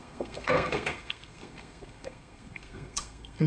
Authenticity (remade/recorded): remade